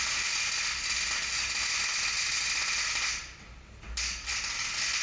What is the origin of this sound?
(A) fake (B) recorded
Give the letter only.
B